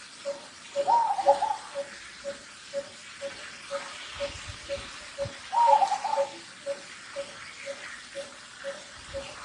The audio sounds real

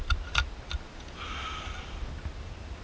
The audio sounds real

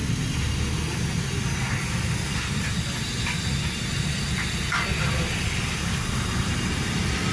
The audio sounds real